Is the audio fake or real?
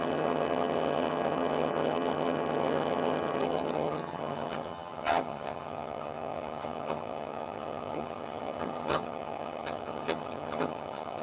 fake